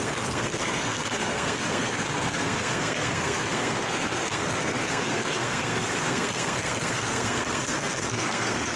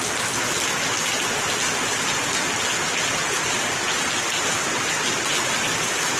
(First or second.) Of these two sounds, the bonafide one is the second